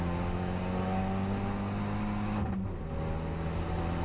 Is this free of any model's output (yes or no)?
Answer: yes